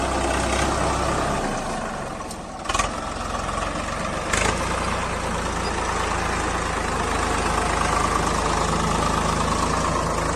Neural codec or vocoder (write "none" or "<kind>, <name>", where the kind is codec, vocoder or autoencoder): none